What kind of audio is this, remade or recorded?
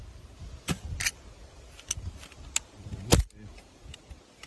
recorded